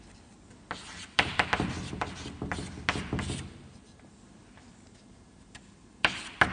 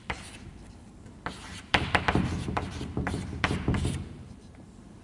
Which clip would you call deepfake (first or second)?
second